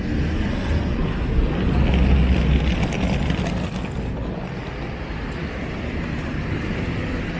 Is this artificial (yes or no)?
no